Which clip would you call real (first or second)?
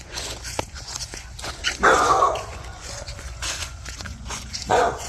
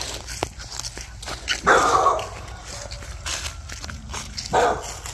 second